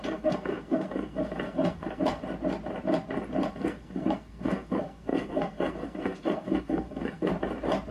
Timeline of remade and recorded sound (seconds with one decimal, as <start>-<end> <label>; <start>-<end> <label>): 0.0-2.2 remade; 2.2-3.5 recorded; 3.5-7.3 remade; 7.3-7.9 recorded